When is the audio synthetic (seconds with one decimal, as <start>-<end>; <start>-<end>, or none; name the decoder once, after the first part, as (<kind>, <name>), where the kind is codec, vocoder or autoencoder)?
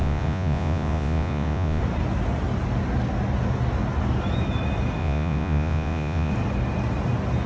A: 0.0-1.8 (vocoder, Vocos); 5.0-6.3